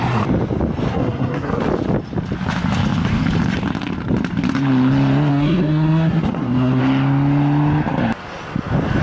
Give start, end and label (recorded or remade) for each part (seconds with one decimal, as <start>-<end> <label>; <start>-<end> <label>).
0.0-0.9 recorded; 0.9-1.6 remade; 1.6-5.3 recorded; 5.3-6.8 remade; 6.8-9.0 recorded